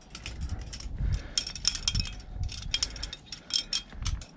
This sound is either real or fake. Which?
real